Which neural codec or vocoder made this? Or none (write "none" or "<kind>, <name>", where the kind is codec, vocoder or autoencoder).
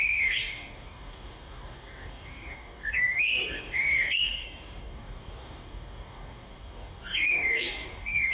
codec, DAC